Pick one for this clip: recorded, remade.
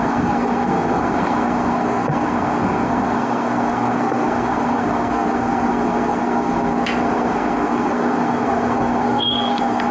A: remade